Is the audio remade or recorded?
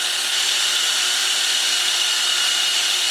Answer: recorded